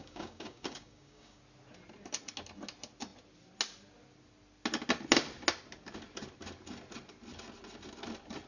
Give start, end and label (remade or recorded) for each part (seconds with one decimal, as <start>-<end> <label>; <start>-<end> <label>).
0.0-1.4 remade; 1.4-8.5 recorded